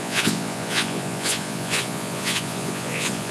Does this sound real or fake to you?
fake